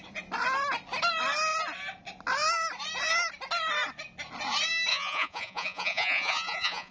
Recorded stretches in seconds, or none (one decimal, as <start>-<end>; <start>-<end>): 0.0-4.9